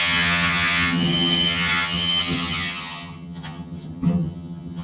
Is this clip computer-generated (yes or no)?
yes